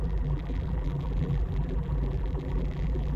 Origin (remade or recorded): remade